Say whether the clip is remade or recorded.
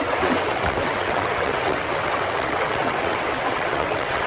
remade